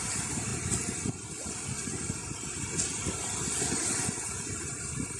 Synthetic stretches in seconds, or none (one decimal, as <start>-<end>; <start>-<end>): none